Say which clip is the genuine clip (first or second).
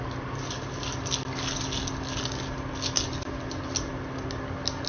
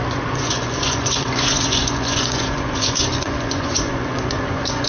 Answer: first